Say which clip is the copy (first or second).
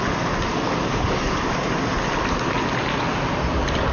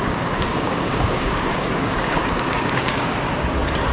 second